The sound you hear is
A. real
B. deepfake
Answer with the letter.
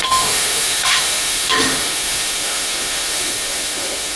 B